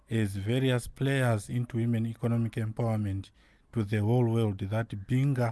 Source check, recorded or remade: recorded